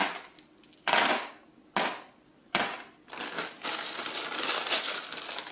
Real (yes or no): yes